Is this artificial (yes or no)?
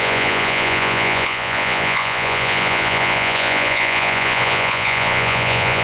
yes